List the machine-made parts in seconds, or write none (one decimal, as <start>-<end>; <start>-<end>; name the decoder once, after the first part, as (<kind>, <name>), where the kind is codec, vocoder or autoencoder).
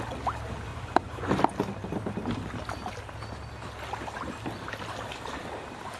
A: 0.7-1.3 (vocoder, Vocos)